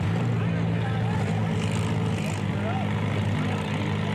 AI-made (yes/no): no